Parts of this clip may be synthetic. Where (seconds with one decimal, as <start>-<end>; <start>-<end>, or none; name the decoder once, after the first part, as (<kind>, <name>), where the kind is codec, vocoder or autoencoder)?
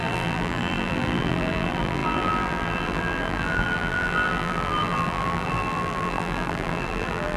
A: 0.0-7.4 (vocoder, BigVGAN v2)